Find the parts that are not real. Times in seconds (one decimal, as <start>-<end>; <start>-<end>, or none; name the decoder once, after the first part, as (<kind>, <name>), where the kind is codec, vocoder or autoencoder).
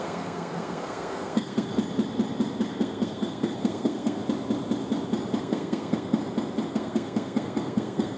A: 0.0-1.7 (codec, SNAC); 2.7-4.2; 5.4-6.2; 6.7-8.2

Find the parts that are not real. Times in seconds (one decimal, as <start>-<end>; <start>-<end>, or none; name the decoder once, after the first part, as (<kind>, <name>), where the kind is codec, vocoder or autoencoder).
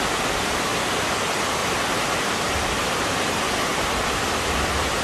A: none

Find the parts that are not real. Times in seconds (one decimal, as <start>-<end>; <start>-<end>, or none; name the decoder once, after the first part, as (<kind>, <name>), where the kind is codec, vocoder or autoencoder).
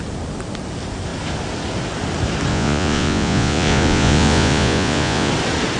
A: 2.5-5.3 (vocoder, Vocos)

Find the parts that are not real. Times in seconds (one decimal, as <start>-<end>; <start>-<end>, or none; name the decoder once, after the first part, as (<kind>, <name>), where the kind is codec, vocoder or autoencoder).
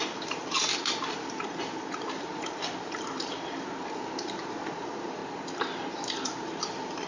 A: 0.0-5.2 (vocoder, BigVGAN v2); 5.9-7.1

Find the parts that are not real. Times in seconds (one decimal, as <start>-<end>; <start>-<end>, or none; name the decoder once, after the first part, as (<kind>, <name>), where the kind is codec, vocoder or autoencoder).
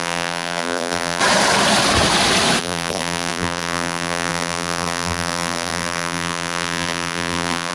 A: 0.0-1.2 (vocoder, BigVGAN v2); 2.6-7.7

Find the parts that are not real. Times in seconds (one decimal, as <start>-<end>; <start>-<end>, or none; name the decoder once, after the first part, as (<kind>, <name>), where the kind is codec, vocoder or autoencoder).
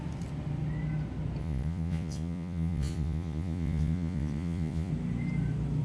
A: 1.4-4.9 (vocoder, Vocos)